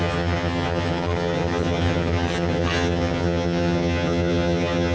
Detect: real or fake fake